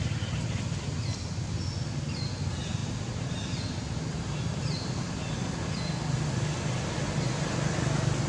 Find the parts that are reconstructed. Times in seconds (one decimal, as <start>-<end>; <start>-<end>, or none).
2.8-4.6

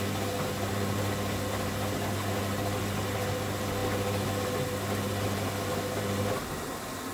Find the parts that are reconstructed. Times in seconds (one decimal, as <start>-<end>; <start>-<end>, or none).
none

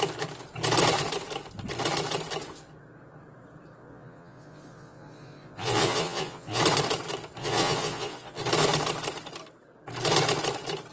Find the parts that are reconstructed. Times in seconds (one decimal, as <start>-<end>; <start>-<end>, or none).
3.8-6.6; 7.4-8.4

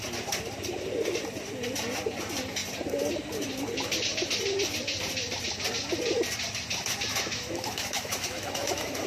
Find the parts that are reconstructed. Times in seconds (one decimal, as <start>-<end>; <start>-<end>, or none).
7.1-9.1

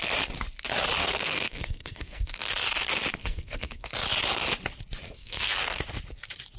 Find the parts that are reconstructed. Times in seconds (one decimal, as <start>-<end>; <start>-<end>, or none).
1.0-2.5; 3.2-3.9; 5.2-5.8

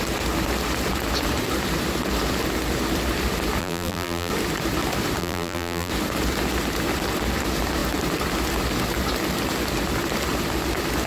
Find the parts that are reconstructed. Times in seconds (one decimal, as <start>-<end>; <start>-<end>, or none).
3.6-4.3; 5.2-5.9

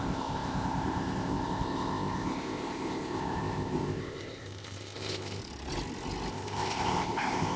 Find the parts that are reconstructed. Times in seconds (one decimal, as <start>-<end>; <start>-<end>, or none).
0.0-5.4; 6.3-7.6